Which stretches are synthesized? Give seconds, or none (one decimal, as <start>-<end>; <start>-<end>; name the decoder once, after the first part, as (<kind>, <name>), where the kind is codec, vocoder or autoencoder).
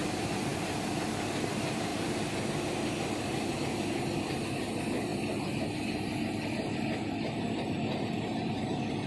none